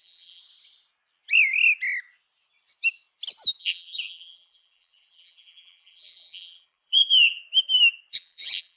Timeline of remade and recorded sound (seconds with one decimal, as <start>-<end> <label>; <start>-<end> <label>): 0.0-0.4 remade; 0.4-3.6 recorded; 3.6-7.4 remade; 7.4-8.1 recorded; 8.1-8.8 remade